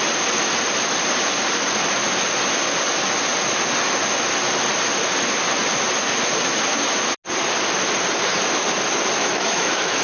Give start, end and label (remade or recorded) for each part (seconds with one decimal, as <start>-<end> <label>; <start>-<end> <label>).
0.0-9.2 recorded; 9.2-10.0 remade

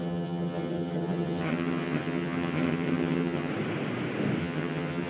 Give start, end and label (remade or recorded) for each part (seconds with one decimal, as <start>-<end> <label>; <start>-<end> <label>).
0.0-3.5 remade; 3.5-4.4 recorded; 4.4-5.1 remade

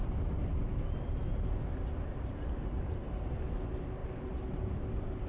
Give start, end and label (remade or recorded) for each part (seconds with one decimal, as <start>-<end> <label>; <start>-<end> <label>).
0.0-5.3 recorded

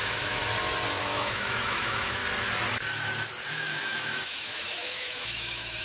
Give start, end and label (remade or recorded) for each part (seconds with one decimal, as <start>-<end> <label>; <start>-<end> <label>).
0.0-0.4 remade; 0.4-1.0 recorded; 1.0-2.2 remade; 2.2-3.5 recorded; 3.5-5.8 remade

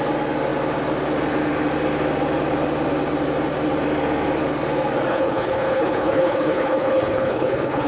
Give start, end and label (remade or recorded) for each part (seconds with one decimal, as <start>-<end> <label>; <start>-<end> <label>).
0.0-5.1 recorded; 5.1-7.9 remade

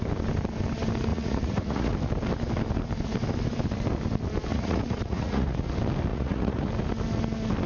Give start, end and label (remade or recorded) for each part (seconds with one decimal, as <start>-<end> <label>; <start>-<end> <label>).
0.0-1.1 recorded; 1.1-1.9 remade; 1.9-4.5 recorded; 4.5-5.6 remade; 5.6-6.1 recorded; 6.1-6.7 remade; 6.7-7.7 recorded

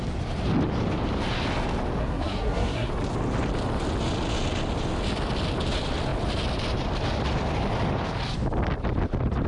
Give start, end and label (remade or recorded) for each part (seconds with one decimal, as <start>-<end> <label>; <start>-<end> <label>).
0.0-2.0 recorded; 2.0-2.9 remade; 2.9-9.5 recorded

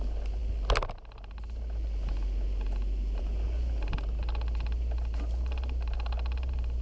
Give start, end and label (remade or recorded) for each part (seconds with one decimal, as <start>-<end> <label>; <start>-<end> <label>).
0.0-6.8 recorded